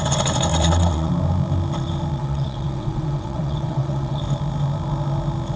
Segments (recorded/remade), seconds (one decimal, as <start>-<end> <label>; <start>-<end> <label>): 0.0-0.5 recorded; 0.5-1.1 remade; 1.1-2.2 recorded; 2.2-4.2 remade; 4.2-5.6 recorded